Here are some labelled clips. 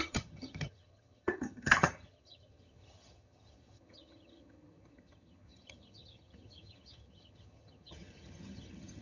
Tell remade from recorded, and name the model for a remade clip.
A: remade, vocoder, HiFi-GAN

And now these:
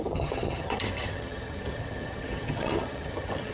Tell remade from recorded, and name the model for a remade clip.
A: remade, vocoder, HiFi-GAN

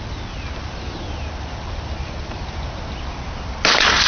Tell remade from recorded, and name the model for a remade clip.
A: recorded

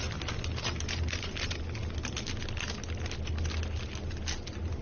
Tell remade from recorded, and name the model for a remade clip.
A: recorded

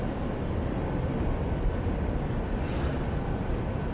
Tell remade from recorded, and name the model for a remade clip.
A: recorded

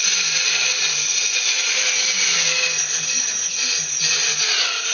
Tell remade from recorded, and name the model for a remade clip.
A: recorded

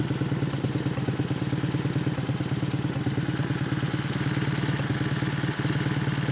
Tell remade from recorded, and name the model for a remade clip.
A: recorded